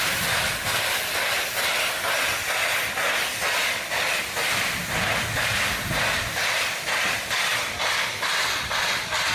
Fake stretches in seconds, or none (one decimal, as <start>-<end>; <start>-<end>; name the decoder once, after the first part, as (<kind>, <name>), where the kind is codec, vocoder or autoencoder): 0.0-9.3 (vocoder, BigVGAN v2)